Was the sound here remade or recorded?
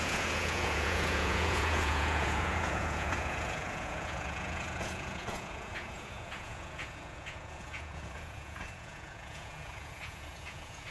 remade